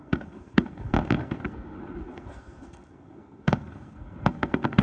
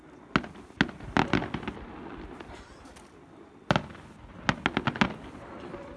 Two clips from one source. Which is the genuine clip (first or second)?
second